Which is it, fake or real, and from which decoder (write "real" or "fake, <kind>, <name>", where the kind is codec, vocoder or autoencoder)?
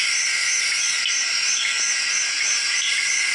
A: real